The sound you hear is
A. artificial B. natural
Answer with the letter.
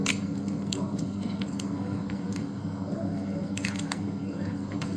A